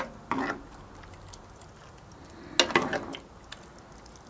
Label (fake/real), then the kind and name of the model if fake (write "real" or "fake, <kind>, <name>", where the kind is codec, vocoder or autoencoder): real